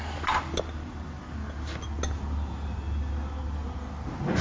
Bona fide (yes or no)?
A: yes